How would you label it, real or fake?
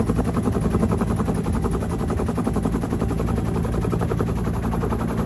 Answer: real